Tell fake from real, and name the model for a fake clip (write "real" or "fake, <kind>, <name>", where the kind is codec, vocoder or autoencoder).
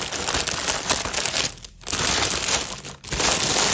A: real